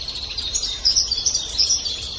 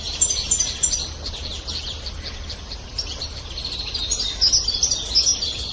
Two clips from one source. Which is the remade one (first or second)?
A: first